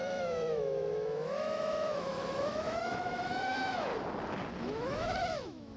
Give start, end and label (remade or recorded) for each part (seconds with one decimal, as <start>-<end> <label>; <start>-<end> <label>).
0.0-3.9 remade; 3.9-4.6 recorded; 4.6-5.8 remade